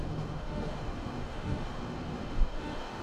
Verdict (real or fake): fake